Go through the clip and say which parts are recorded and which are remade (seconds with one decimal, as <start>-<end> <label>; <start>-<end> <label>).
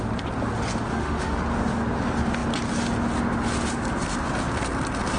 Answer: 0.0-0.9 recorded; 0.9-1.4 remade; 1.4-5.2 recorded